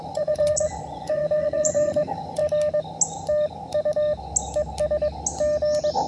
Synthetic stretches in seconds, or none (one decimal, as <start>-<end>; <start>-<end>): 0.0-2.4